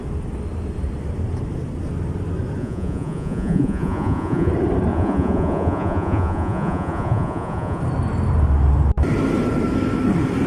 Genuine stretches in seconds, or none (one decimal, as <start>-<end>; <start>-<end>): 0.0-2.6; 4.5-4.9; 7.8-10.5